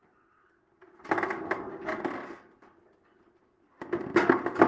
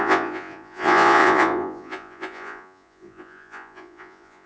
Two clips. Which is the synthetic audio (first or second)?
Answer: second